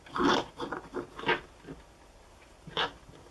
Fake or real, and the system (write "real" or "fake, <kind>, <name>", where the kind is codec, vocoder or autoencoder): real